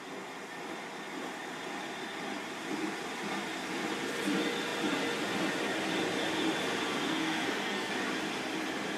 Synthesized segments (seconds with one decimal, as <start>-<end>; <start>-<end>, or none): 7.0-7.9